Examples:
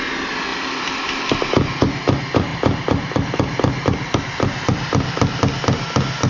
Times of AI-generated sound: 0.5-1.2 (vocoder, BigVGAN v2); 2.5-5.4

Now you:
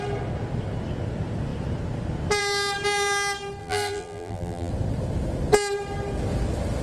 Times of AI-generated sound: 3.6-4.7 (vocoder, BigVGAN v2)

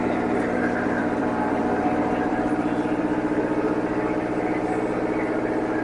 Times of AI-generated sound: 0.0-3.0 (vocoder, BigVGAN v2)

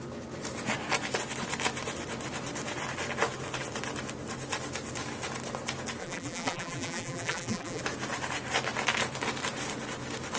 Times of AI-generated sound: 6.0-7.8 (vocoder, BigVGAN v2)

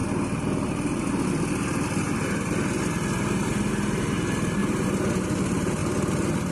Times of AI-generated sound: 3.7-4.6 (vocoder, BigVGAN v2); 5.2-5.8